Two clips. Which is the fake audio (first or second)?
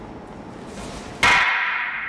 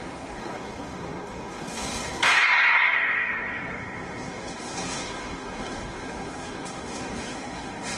second